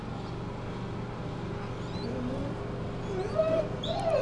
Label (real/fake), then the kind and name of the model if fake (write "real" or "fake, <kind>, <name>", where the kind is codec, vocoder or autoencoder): real